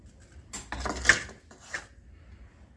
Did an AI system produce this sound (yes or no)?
no